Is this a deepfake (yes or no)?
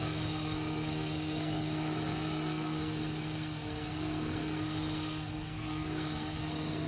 yes